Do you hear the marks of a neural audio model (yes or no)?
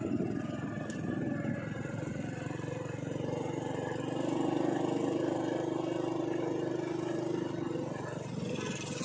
no